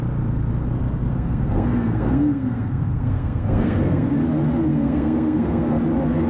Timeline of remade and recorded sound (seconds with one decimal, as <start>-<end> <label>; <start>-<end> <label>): 0.0-1.1 recorded; 1.1-4.1 remade; 4.1-4.7 recorded; 4.7-5.8 remade; 5.8-6.3 recorded